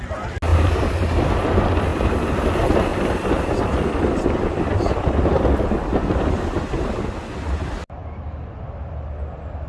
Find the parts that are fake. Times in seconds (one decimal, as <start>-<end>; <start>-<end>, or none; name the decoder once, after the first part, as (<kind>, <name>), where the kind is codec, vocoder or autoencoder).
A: 0.5-1.4 (vocoder, BigVGAN v2); 2.9-4.9